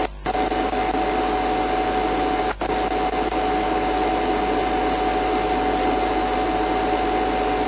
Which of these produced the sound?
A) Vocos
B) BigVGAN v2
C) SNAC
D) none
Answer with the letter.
D